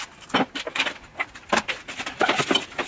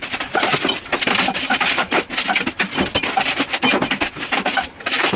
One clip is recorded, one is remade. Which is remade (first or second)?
second